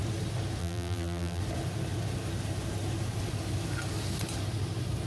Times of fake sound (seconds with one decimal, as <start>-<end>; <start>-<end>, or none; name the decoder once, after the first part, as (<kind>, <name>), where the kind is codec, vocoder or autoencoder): 0.6-1.4 (vocoder, BigVGAN v2)